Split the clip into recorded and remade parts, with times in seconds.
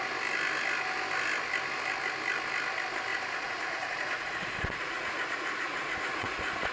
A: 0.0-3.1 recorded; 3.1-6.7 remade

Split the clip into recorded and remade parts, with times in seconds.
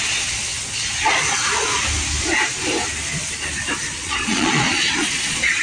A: 0.0-0.5 remade; 0.5-3.9 recorded; 3.9-5.6 remade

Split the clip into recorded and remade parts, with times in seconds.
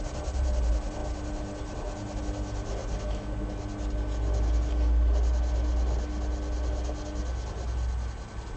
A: 0.0-8.6 recorded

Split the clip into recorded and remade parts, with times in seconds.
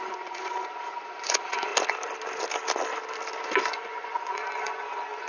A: 0.0-1.7 remade; 1.7-3.7 recorded; 3.7-5.3 remade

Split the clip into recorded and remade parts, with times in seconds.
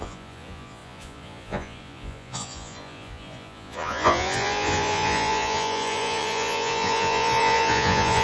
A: 0.0-8.2 remade